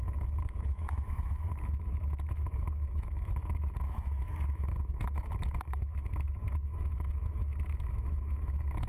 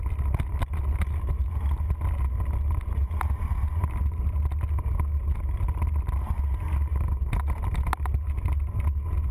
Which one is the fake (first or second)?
first